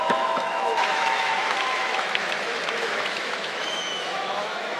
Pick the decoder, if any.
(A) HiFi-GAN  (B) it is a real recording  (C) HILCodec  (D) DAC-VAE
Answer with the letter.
D